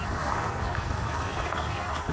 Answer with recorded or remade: remade